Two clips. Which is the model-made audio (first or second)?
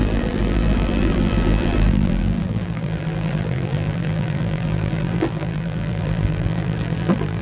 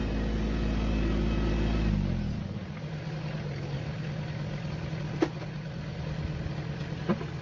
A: first